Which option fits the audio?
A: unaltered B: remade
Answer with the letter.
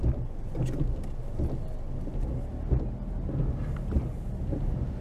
A